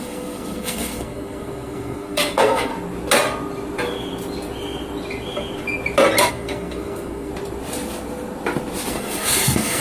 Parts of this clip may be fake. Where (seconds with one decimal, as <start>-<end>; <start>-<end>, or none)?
0.0-2.7; 6.3-7.3; 8.9-9.8